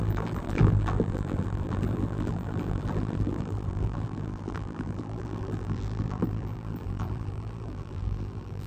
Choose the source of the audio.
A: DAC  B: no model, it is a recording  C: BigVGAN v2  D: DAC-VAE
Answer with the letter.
C